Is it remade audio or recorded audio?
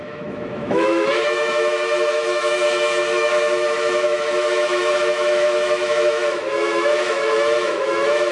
remade